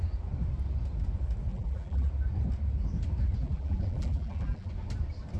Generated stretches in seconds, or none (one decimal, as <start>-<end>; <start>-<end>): 1.5-2.1; 3.4-4.7